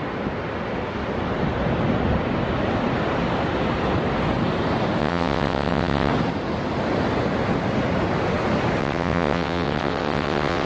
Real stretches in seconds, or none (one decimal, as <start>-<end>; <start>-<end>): 0.0-5.0; 6.1-8.8